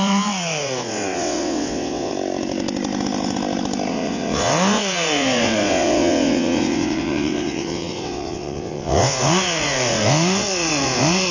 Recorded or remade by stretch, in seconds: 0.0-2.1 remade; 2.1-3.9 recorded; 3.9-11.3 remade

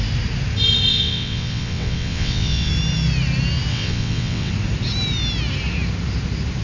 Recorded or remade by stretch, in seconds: 0.0-0.9 recorded; 0.9-2.7 remade; 2.7-3.7 recorded; 3.7-4.5 remade; 4.5-6.6 recorded

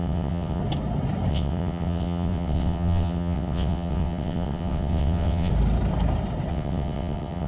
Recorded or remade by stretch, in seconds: 0.0-0.6 remade; 0.6-1.3 recorded; 1.3-5.5 remade; 5.5-6.5 recorded; 6.5-7.5 remade

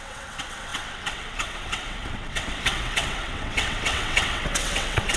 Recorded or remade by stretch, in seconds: 0.0-5.2 remade